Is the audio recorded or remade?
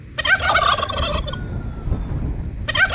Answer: recorded